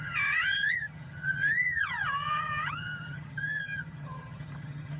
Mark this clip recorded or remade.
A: remade